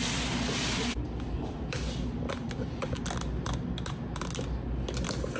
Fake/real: real